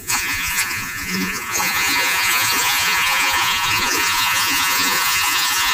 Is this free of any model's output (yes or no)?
no